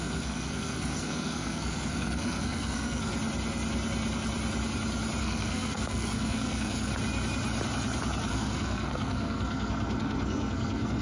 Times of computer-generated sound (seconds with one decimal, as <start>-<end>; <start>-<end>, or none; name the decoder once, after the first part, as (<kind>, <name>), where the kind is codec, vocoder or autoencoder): 0.0-3.1 (codec, SNAC); 5.2-6.9; 8.3-11.0